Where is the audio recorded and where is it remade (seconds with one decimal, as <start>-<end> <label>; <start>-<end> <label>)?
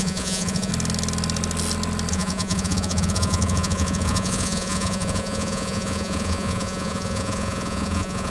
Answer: 0.0-0.7 remade; 0.7-2.1 recorded; 2.1-8.3 remade